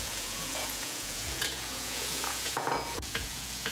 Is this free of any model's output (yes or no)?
no